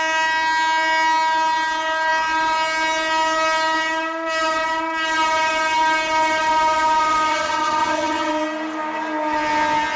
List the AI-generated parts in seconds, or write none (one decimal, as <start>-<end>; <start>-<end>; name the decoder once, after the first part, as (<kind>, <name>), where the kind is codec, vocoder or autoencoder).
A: 7.3-8.3 (vocoder, HiFi-GAN)